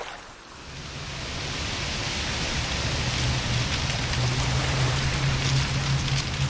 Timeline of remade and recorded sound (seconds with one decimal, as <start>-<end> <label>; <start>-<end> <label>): 0.0-4.6 recorded; 4.6-5.4 remade; 5.4-6.5 recorded